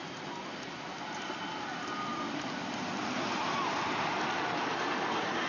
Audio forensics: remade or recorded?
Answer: recorded